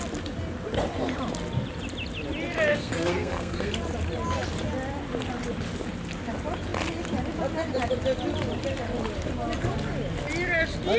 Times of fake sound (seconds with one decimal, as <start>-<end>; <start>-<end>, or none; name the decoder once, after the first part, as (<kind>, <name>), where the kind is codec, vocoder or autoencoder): 2.7-3.7 (codec, SNAC)